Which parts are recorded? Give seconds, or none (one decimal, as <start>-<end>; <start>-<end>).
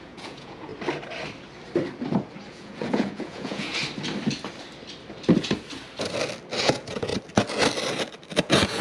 0.7-2.5; 3.8-6.6; 7.1-8.4